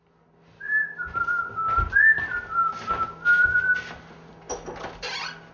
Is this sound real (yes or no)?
yes